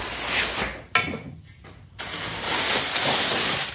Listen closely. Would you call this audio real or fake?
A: real